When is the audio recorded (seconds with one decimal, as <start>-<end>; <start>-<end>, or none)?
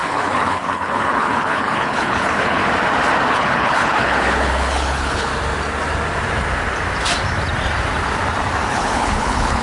2.6-3.3; 5.3-8.7